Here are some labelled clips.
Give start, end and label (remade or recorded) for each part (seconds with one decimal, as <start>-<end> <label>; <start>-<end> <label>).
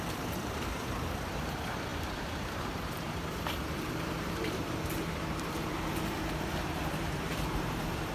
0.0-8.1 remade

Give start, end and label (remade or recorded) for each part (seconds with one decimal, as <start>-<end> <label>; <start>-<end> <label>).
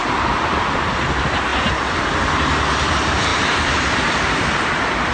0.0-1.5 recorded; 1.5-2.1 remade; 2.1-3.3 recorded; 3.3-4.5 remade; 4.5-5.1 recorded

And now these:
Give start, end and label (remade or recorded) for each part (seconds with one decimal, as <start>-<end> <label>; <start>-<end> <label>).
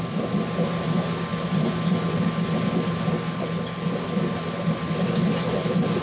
0.0-1.3 remade; 1.3-4.9 recorded; 4.9-6.0 remade